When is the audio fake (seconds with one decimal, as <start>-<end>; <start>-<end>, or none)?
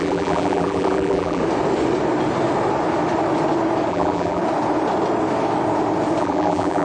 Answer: 0.0-1.4; 3.9-4.4; 6.2-6.8